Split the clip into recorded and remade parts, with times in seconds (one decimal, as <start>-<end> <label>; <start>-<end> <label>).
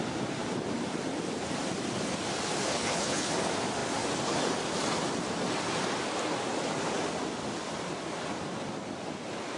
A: 0.0-2.7 recorded; 2.7-3.3 remade; 3.3-9.6 recorded